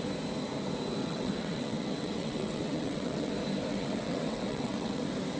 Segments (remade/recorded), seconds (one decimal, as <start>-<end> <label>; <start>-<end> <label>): 0.0-1.0 recorded; 1.0-3.3 remade; 3.3-3.7 recorded; 3.7-5.0 remade; 5.0-5.4 recorded